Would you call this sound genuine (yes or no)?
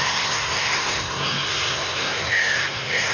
no